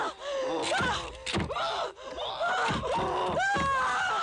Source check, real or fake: real